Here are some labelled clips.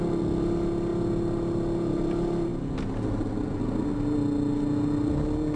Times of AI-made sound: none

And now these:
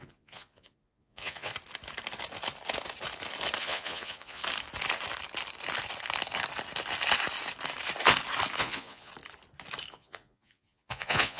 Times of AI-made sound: 0.0-1.5 (vocoder, Vocos); 3.6-4.4; 8.6-9.1; 9.9-11.4

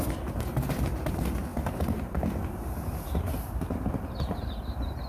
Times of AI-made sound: none

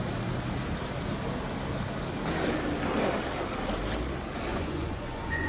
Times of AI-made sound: 4.5-5.5 (vocoder, Vocos)